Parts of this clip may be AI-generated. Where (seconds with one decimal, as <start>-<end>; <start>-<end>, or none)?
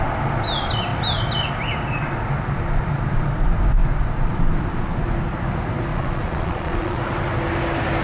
5.9-7.0